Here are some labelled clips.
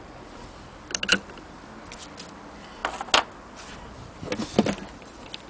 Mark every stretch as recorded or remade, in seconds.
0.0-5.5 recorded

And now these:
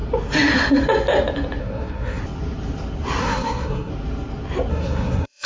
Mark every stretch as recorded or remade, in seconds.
0.0-1.6 recorded; 1.6-2.2 remade; 2.2-3.2 recorded; 3.2-3.9 remade; 3.9-4.7 recorded; 4.7-5.5 remade

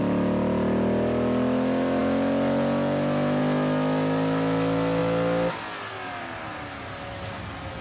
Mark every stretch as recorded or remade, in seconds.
0.0-7.8 recorded

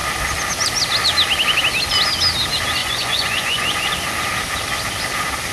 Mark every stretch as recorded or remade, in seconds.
0.0-2.8 recorded; 2.8-3.9 remade; 3.9-5.5 recorded